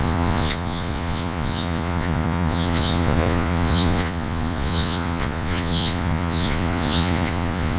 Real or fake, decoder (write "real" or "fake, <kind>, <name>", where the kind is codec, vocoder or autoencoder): fake, vocoder, Vocos